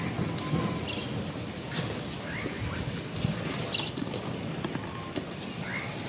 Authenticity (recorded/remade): recorded